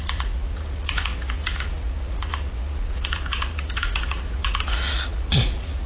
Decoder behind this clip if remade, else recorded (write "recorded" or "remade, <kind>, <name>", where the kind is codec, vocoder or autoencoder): remade, vocoder, Vocos